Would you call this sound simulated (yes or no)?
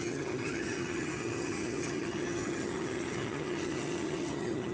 yes